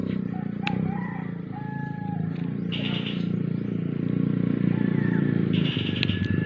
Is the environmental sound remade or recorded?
recorded